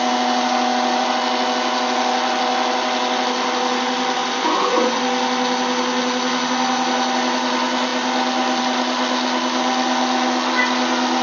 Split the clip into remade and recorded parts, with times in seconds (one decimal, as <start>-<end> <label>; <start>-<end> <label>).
0.0-4.2 recorded; 4.2-5.0 remade; 5.0-11.2 recorded